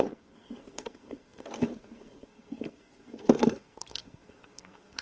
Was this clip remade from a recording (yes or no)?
yes